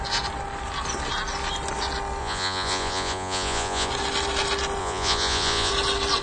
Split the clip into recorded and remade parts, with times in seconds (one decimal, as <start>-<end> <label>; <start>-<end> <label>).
0.0-2.2 recorded; 2.2-3.9 remade; 3.9-4.8 recorded; 4.8-5.7 remade; 5.7-6.2 recorded